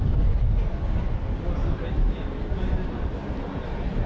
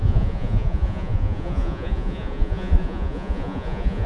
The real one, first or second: first